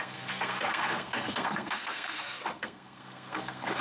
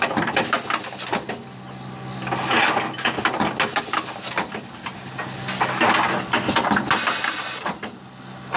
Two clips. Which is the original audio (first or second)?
second